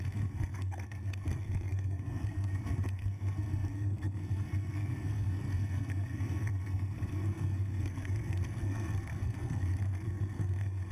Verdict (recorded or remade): remade